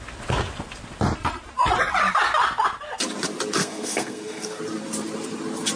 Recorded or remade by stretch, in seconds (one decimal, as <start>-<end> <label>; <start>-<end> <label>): 0.0-3.6 recorded; 3.6-4.6 remade; 4.6-5.8 recorded